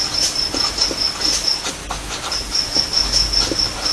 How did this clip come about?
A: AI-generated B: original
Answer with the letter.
B